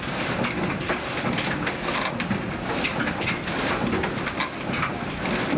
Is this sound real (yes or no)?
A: yes